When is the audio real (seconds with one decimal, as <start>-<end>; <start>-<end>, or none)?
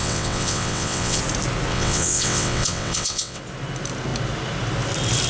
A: 1.2-1.7; 3.4-5.3